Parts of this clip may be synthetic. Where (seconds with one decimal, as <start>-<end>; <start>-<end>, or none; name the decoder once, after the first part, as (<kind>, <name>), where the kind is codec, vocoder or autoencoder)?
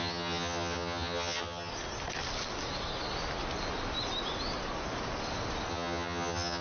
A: 0.0-1.7 (vocoder, HiFi-GAN); 5.7-6.6